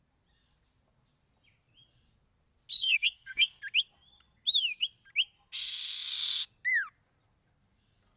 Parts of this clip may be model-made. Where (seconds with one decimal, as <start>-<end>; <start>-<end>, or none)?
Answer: 2.7-3.6

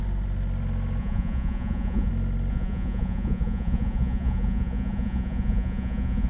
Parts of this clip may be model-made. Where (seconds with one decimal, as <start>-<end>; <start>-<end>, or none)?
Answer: 1.0-2.1; 2.5-6.3

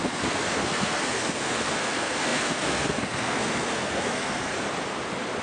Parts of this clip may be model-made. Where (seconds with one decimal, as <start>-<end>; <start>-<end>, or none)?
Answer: 0.0-4.5

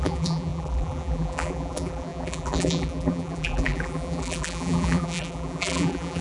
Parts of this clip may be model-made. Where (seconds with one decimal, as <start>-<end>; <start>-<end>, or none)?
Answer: 0.0-6.2

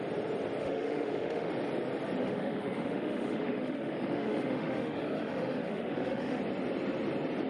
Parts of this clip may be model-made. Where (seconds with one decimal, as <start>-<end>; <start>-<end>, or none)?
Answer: 0.6-1.5; 2.2-6.4

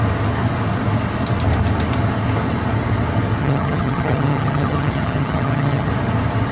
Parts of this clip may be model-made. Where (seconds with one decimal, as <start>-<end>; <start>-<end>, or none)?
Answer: 3.4-5.9

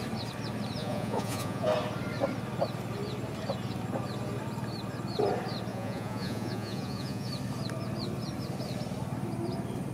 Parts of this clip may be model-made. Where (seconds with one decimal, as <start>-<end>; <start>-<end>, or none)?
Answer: 0.8-1.7; 5.7-7.3